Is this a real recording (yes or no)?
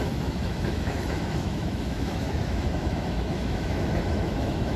no